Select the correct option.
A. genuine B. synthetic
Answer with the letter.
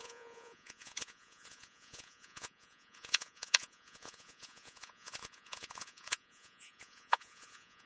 B